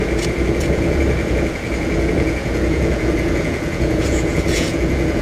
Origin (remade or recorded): remade